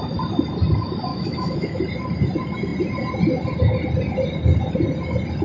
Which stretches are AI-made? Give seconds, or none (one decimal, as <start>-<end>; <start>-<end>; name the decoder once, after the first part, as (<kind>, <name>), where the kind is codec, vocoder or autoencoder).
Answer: 1.1-1.8 (autoencoder, DAC-VAE)